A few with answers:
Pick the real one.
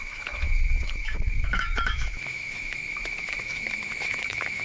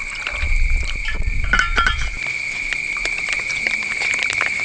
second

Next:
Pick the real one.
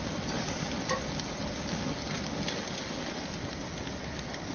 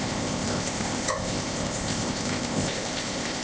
first